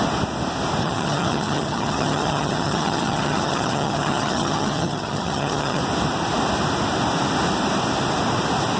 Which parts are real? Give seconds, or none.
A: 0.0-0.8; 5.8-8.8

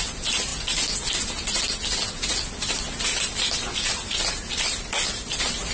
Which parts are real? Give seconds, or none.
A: 0.0-5.7

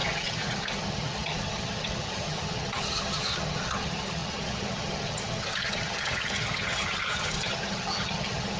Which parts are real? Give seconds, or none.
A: none

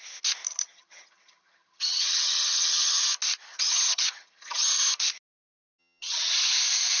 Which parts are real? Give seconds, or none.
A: 0.0-0.6; 3.0-3.5; 4.7-5.8; 6.6-7.0